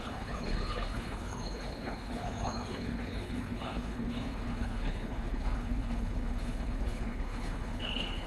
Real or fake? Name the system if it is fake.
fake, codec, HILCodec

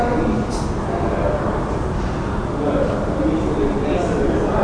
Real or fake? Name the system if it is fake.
real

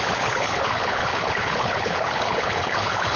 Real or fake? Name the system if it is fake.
fake, codec, HILCodec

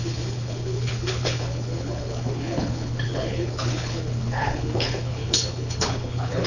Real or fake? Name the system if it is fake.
fake, codec, HILCodec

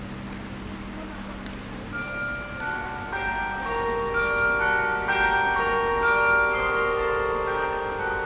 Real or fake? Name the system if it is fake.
real